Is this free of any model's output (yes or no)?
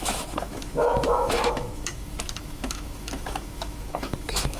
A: no